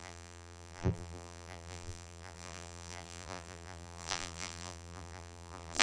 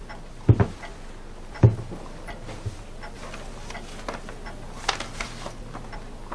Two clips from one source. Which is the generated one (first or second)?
first